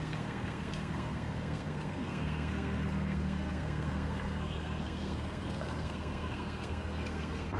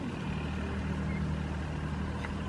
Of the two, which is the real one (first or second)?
second